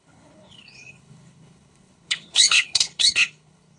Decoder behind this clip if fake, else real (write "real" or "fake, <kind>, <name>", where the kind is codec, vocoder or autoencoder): fake, codec, HILCodec